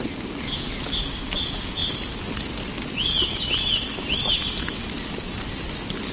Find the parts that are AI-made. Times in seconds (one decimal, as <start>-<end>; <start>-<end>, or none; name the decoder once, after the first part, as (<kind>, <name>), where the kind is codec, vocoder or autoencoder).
none